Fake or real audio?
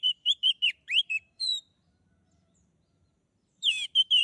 fake